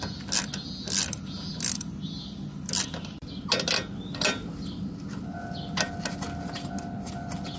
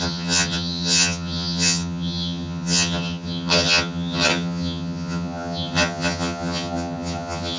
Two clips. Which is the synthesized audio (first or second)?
second